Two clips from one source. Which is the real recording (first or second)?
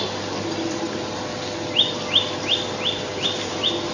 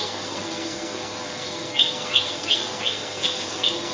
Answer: first